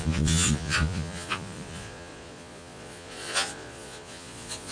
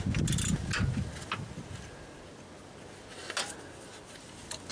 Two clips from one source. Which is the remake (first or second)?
first